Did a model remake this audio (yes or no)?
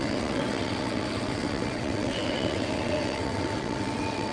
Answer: yes